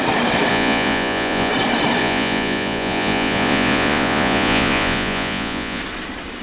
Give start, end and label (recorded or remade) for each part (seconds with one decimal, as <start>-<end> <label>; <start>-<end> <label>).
0.0-0.5 recorded; 0.5-1.5 remade; 1.5-2.0 recorded; 2.0-5.8 remade; 5.8-6.4 recorded